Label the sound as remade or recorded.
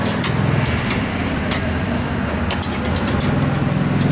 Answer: recorded